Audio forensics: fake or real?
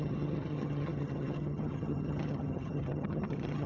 fake